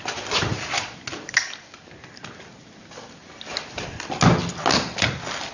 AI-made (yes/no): no